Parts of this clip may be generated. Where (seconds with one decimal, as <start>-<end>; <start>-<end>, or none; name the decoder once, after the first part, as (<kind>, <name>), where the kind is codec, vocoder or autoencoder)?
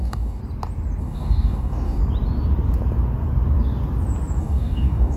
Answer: 0.0-0.4 (codec, DAC); 1.0-2.0; 4.4-5.2